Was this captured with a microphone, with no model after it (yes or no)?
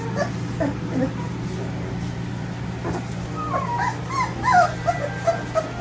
yes